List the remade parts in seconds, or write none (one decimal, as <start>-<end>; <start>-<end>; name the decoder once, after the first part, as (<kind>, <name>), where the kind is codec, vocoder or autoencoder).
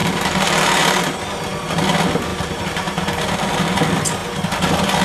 0.0-1.0 (vocoder, BigVGAN v2); 2.3-3.6